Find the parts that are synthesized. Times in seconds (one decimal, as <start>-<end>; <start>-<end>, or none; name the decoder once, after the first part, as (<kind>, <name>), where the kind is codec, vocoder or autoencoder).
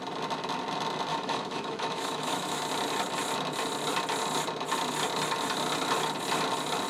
1.1-2.6 (autoencoder, DAC-VAE)